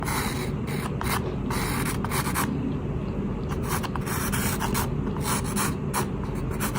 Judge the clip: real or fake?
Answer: real